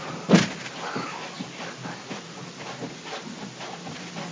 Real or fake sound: real